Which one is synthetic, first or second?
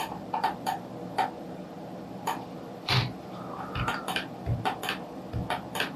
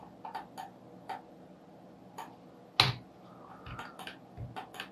first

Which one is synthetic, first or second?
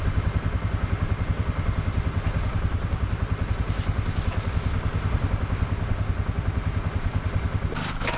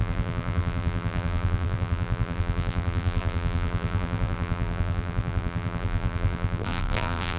second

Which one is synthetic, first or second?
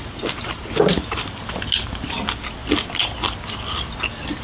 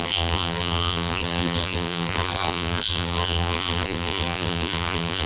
second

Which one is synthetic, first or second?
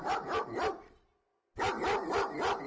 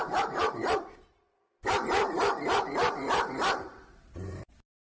second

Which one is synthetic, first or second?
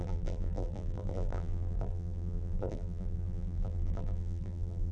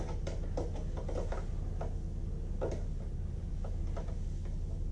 first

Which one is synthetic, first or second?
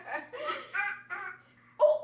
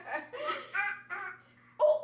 first